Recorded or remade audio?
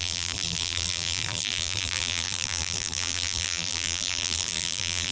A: remade